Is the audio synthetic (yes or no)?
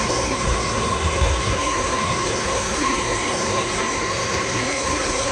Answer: yes